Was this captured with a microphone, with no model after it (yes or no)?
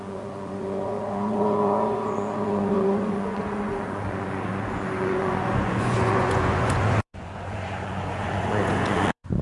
no